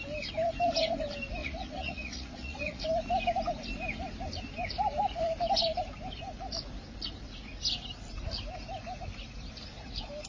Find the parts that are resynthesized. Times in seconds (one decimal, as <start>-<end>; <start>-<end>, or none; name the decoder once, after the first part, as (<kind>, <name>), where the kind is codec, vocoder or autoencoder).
1.4-2.8 (vocoder, Vocos)